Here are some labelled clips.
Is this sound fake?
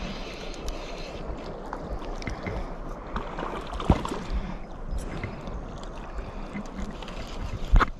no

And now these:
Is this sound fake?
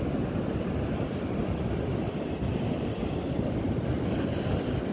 yes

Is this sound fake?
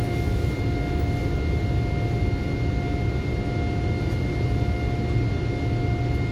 no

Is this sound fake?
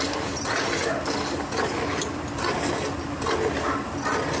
no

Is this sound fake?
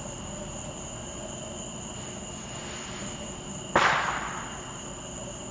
no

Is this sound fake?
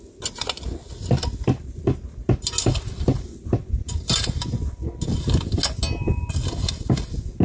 no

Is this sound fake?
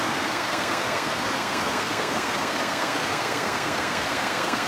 yes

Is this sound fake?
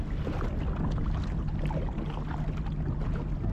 no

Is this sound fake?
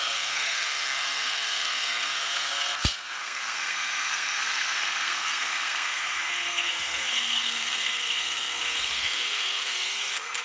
yes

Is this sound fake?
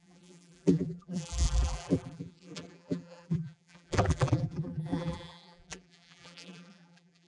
yes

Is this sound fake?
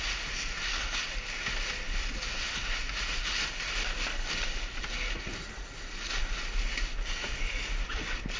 no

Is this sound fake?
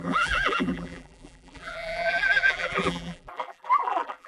yes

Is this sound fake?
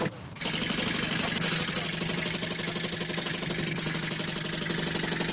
no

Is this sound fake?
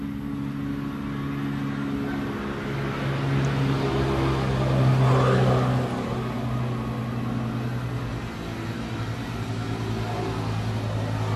no